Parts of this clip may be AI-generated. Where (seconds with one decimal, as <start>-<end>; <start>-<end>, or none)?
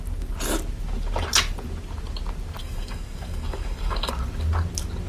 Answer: 2.6-4.1